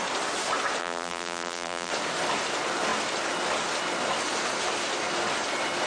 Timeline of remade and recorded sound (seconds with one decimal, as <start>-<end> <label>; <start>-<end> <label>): 0.0-0.8 recorded; 0.8-1.9 remade; 1.9-5.9 recorded